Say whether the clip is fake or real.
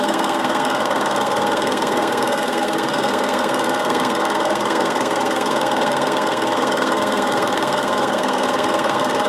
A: fake